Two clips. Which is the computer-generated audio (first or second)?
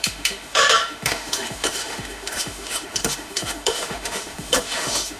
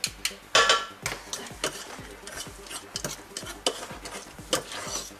first